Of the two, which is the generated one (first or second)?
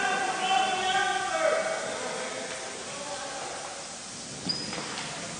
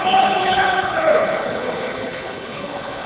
second